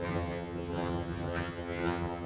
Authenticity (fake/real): fake